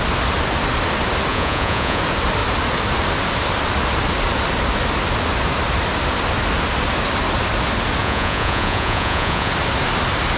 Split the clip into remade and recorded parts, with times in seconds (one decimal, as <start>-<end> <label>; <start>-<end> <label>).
0.0-1.3 recorded; 1.3-2.0 remade; 2.0-8.0 recorded; 8.0-9.5 remade; 9.5-10.4 recorded